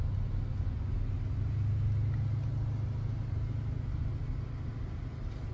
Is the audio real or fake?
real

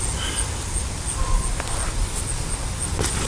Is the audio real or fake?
real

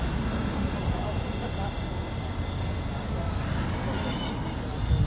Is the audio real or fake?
real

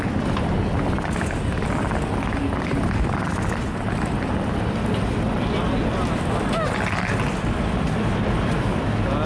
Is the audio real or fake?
real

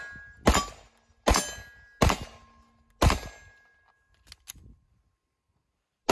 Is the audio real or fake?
real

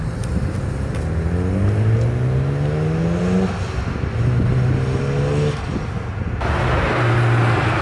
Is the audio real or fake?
real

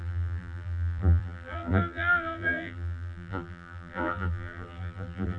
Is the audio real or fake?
fake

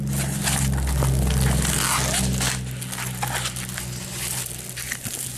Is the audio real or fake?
real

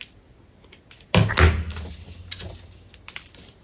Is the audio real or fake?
real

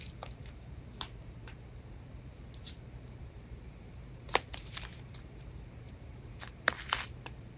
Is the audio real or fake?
fake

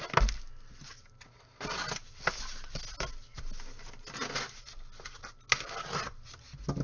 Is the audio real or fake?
real